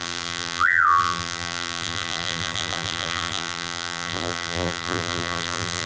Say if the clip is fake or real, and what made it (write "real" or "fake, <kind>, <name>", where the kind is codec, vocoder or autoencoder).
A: fake, vocoder, BigVGAN v2